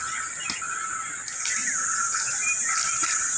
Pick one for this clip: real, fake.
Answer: real